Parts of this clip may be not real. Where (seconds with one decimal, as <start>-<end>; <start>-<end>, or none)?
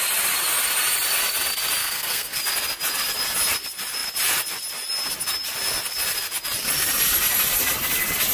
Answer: 1.8-2.4